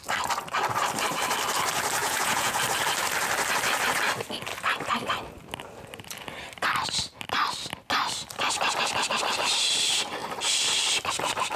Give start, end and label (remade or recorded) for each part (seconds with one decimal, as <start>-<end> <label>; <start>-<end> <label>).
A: 0.0-2.0 recorded; 2.0-2.6 remade; 2.6-11.6 recorded